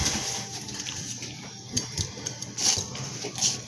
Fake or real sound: fake